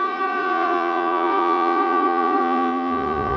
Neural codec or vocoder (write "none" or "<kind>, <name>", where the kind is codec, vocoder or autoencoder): vocoder, Vocos